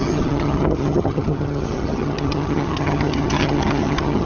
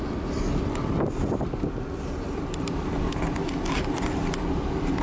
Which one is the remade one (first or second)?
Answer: first